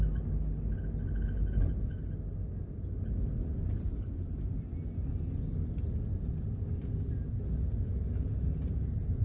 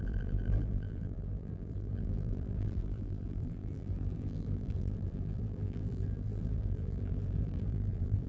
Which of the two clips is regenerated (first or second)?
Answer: second